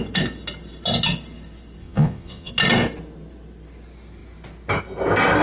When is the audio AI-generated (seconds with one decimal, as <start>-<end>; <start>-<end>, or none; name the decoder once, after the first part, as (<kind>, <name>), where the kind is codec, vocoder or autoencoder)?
1.8-2.5 (vocoder, Vocos)